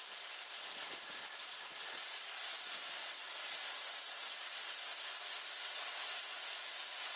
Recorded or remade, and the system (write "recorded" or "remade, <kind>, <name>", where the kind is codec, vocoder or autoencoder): recorded